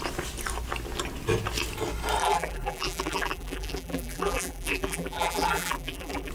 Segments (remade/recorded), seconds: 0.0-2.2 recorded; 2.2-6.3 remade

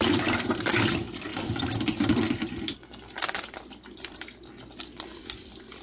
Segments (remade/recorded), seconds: 0.0-5.8 remade

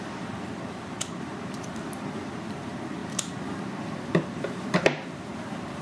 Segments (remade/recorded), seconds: 0.0-3.0 remade; 3.0-3.6 recorded; 3.6-5.8 remade